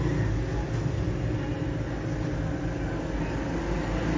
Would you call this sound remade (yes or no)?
no